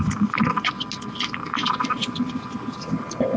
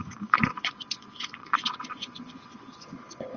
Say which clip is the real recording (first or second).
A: first